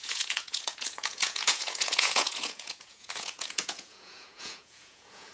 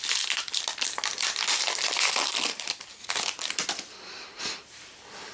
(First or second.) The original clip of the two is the second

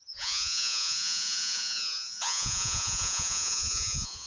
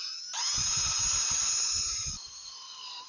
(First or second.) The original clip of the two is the second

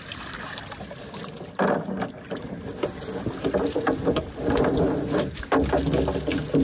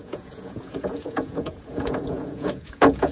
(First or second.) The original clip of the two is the first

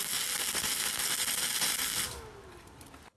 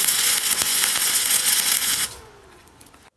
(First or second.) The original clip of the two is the first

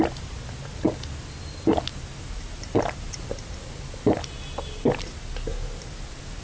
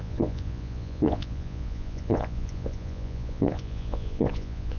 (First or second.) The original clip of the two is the first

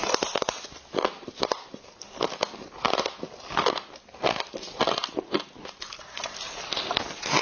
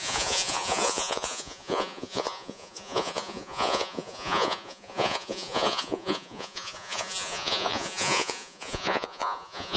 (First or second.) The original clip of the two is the first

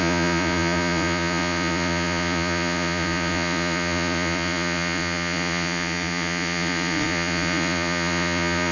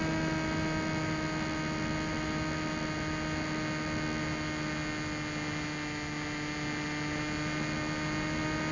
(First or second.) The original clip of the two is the second